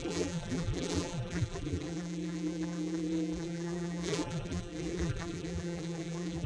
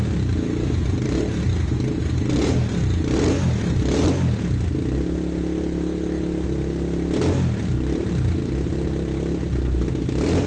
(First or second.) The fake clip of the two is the first